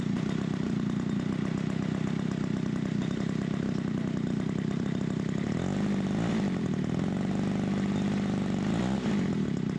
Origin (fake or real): real